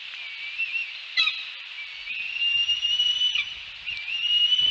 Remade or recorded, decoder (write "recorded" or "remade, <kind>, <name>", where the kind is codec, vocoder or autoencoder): recorded